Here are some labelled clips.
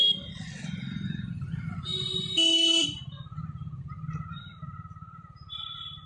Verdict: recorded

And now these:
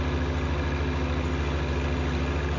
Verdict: recorded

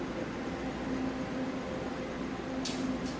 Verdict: recorded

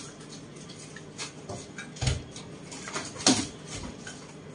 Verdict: recorded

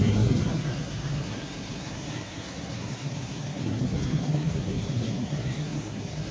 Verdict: remade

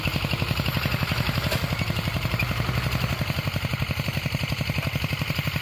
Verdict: recorded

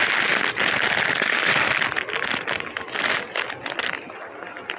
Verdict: recorded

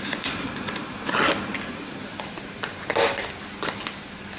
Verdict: recorded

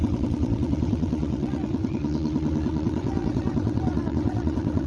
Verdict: remade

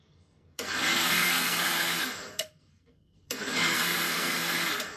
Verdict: remade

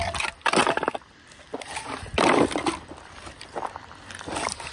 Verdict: recorded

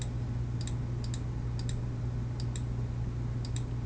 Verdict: recorded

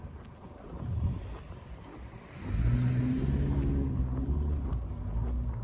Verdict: recorded